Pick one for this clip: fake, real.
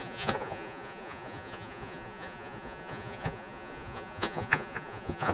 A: fake